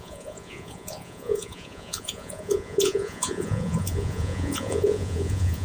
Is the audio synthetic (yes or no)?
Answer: yes